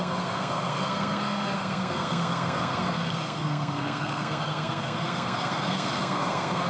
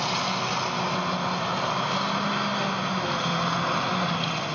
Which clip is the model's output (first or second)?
first